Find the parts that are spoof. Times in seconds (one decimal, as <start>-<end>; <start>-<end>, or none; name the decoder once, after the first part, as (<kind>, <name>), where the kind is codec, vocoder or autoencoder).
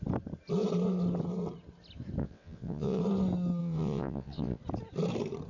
2.2-3.0 (vocoder, WaveNeXt); 3.6-4.6